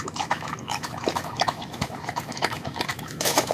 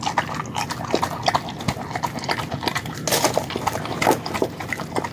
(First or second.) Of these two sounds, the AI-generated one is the first